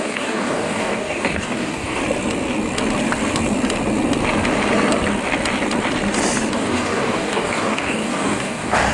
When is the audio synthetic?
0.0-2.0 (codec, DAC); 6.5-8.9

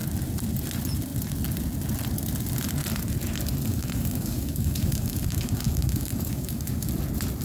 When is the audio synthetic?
3.7-6.9 (codec, DAC)